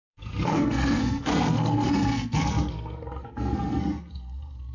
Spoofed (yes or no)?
yes